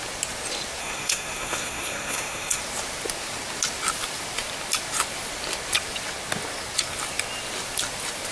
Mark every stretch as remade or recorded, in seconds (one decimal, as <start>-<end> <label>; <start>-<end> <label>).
0.0-0.8 recorded; 0.8-2.6 remade; 2.6-8.3 recorded